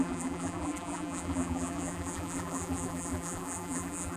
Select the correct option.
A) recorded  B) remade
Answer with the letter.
B